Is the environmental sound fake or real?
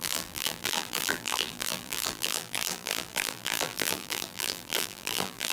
fake